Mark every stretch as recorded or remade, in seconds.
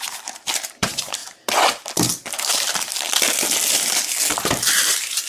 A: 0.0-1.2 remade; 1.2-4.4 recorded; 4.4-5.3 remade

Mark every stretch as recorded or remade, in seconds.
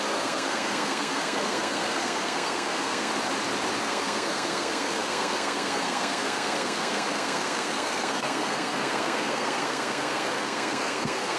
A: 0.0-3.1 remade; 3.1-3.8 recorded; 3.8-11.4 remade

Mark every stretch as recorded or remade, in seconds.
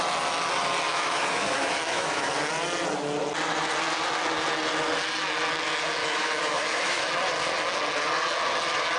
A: 0.0-0.9 recorded; 0.9-2.3 remade; 2.3-6.0 recorded; 6.0-7.1 remade; 7.1-9.0 recorded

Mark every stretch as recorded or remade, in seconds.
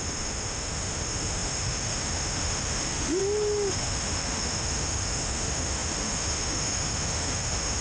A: 0.0-3.2 remade; 3.2-3.7 recorded; 3.7-7.8 remade